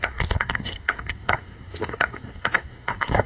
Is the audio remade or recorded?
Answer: remade